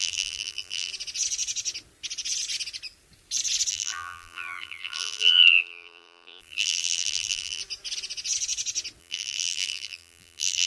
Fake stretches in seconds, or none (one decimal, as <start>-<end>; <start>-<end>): 0.0-0.9; 3.7-7.6; 9.0-10.7